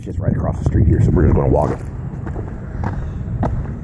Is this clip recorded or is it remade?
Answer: remade